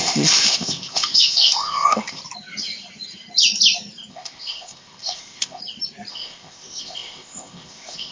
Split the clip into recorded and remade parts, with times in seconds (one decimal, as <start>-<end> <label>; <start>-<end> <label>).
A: 0.0-2.2 remade; 2.2-4.1 recorded; 4.1-5.6 remade; 5.6-6.1 recorded; 6.1-8.1 remade